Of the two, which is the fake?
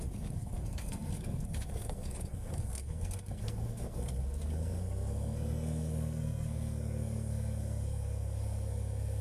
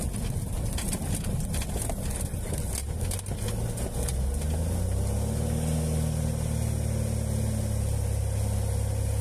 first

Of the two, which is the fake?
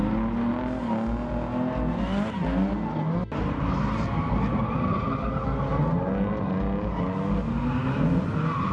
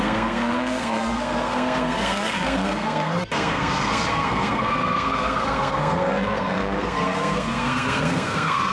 second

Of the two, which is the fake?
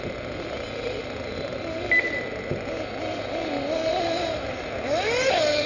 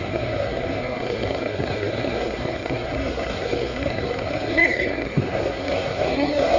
second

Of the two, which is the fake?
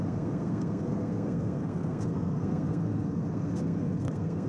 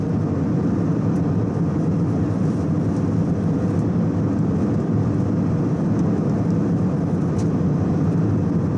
first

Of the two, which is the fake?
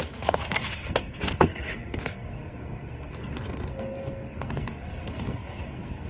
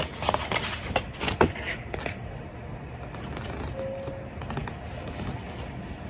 first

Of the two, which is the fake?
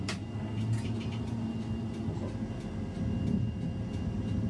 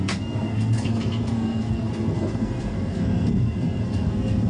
second